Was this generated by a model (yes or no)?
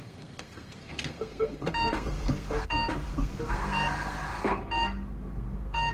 yes